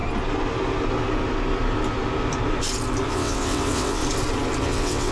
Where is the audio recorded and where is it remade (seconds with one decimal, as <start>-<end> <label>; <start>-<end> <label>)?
0.0-3.1 recorded; 3.1-4.0 remade; 4.0-4.6 recorded; 4.6-5.1 remade